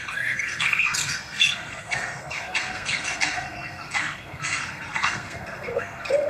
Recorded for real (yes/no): no